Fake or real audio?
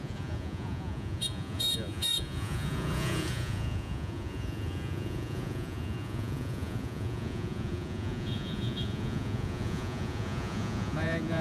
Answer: fake